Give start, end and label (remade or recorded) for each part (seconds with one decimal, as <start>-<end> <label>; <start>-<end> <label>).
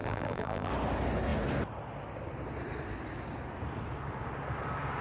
0.0-0.7 remade; 0.7-5.0 recorded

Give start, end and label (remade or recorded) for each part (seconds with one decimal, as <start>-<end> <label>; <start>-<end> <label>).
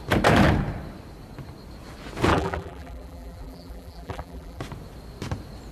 0.0-2.3 recorded; 2.3-4.6 remade; 4.6-5.7 recorded